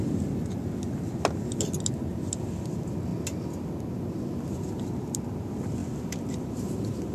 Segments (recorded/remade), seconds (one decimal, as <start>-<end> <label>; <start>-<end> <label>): 0.0-7.1 recorded